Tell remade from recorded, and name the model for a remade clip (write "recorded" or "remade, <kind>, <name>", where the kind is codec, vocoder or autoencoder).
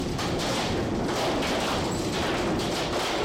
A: recorded